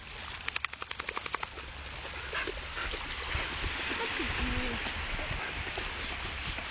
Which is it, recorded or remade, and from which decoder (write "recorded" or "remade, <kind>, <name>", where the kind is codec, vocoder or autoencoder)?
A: recorded